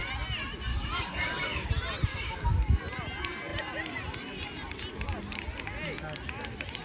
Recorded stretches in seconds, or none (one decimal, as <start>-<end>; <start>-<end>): 0.0-0.7; 1.7-2.1; 2.8-6.8